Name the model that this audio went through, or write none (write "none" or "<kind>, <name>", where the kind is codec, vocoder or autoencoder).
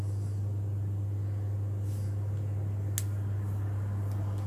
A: none